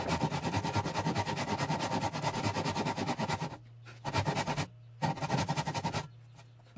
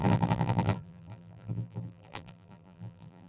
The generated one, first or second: second